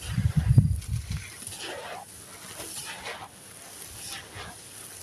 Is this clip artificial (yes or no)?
no